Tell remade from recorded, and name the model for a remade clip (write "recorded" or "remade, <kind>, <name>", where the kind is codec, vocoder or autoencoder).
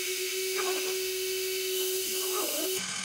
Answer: remade, autoencoder, DAC-VAE